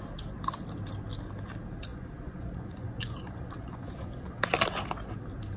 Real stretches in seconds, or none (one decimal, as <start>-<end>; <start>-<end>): 0.0-1.9; 4.4-5.6